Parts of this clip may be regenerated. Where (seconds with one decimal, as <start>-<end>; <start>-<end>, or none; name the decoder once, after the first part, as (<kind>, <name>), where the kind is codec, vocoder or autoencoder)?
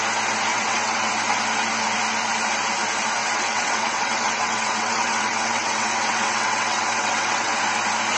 0.5-1.1 (vocoder, WaveNeXt); 3.2-7.6